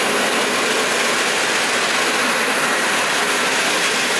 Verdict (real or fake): real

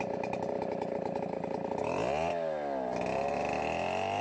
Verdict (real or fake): real